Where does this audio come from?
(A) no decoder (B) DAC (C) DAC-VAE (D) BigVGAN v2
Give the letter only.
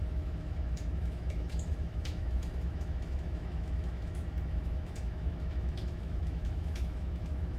C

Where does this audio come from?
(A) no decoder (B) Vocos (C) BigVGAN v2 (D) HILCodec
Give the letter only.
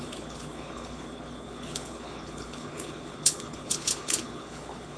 D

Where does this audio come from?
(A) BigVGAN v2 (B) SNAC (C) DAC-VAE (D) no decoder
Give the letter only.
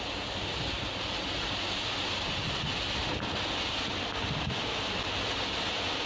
D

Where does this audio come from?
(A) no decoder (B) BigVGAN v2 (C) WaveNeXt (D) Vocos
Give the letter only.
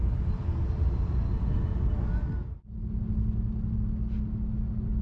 A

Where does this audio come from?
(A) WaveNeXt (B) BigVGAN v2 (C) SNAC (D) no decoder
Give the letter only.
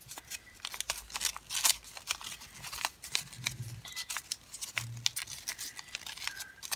D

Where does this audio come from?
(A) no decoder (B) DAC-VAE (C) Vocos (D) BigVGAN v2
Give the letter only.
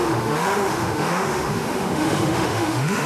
B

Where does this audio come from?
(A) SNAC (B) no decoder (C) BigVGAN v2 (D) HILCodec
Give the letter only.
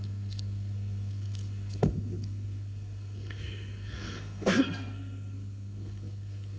A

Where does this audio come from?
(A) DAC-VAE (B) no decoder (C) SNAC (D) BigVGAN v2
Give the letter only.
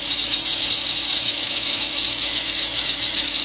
A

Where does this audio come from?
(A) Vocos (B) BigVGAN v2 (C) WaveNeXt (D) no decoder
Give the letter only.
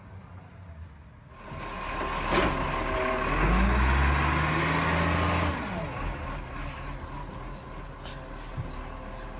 D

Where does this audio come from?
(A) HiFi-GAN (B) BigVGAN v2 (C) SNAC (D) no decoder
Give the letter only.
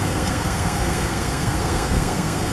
C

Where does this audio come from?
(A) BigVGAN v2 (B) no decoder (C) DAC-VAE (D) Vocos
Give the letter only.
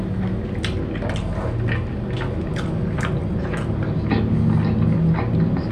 B